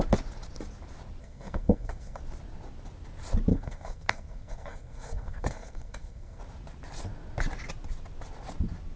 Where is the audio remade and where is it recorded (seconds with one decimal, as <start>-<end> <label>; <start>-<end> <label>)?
0.0-1.2 recorded; 1.2-2.2 remade; 2.2-3.5 recorded; 3.5-6.4 remade; 6.4-9.0 recorded

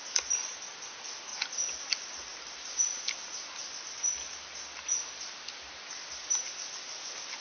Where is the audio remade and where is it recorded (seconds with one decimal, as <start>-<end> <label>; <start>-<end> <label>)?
0.0-7.4 recorded

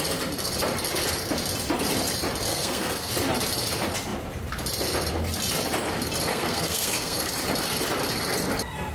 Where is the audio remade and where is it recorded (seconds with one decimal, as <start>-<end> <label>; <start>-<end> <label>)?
0.0-2.5 recorded; 2.5-3.1 remade; 3.1-6.3 recorded; 6.3-7.3 remade; 7.3-8.9 recorded